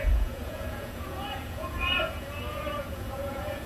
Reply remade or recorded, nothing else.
remade